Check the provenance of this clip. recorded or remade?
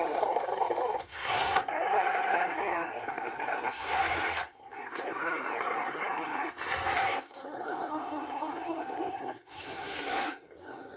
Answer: remade